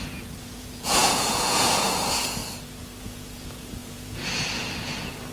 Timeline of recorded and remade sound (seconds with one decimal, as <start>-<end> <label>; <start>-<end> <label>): 0.0-2.4 remade; 2.4-3.0 recorded; 3.0-5.3 remade